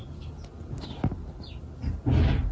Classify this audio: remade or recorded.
recorded